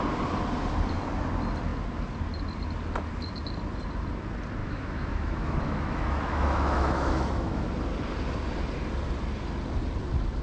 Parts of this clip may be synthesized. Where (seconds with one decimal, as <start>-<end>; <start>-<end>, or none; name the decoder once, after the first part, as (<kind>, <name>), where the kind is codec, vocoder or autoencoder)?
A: 4.6-7.7 (autoencoder, DAC-VAE)